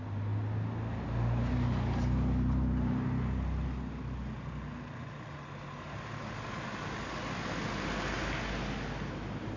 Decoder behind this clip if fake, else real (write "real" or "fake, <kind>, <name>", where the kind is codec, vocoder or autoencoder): real